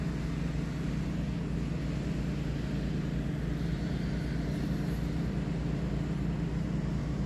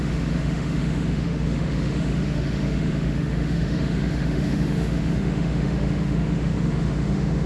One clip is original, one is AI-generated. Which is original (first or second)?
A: first